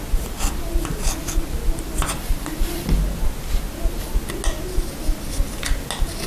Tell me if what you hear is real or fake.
real